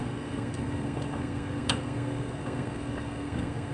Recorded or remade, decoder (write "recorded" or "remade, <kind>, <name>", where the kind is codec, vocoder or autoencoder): remade, codec, SNAC